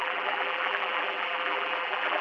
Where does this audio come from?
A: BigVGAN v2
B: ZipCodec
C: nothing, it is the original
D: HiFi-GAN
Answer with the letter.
A